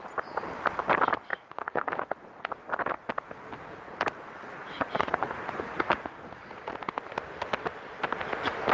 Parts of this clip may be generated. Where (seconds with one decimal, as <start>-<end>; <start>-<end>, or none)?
1.3-2.5; 4.6-6.7